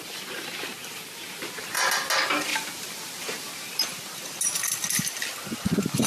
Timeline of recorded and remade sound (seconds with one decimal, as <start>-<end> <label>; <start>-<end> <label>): 0.0-6.1 recorded